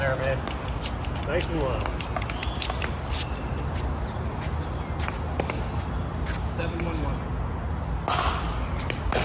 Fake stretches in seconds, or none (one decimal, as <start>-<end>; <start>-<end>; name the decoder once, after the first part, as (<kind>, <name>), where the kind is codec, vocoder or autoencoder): none